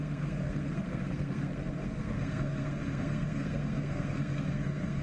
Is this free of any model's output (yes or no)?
no